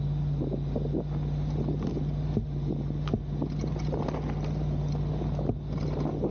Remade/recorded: recorded